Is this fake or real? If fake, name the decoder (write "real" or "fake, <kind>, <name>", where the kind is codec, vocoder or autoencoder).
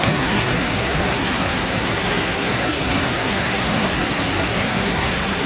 fake, codec, SNAC